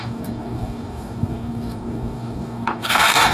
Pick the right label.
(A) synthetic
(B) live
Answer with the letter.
A